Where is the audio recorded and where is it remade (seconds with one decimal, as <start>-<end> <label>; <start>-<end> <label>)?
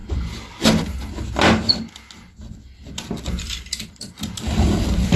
0.0-3.1 recorded; 3.1-5.2 remade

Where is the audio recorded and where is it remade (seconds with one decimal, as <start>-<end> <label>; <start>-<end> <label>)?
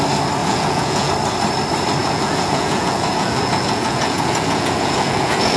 0.0-0.4 recorded; 0.4-1.1 remade; 1.1-2.0 recorded; 2.0-5.6 remade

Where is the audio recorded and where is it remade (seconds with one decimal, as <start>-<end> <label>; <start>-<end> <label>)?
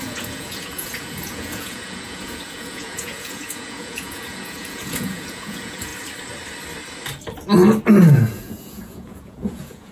0.0-5.9 remade; 5.9-8.3 recorded; 8.3-9.9 remade